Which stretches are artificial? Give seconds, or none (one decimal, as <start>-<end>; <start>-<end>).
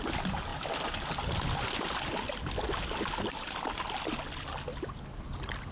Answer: none